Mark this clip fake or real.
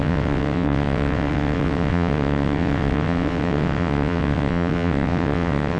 fake